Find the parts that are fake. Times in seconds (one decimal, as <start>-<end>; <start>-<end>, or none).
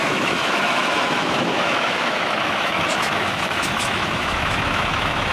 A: 0.0-5.3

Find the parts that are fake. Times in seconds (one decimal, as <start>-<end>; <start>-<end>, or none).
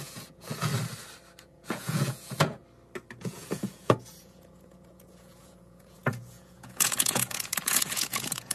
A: 0.0-0.7; 1.4-2.6; 3.2-8.5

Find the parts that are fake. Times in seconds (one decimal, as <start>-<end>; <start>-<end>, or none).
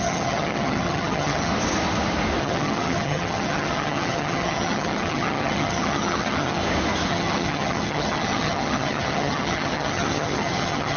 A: 0.0-1.5; 2.4-6.6; 7.1-11.0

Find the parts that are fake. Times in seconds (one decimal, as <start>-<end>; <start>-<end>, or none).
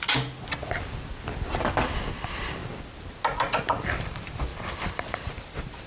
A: 4.5-5.9